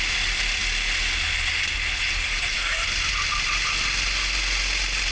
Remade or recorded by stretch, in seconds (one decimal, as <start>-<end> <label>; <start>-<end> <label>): 0.0-5.1 recorded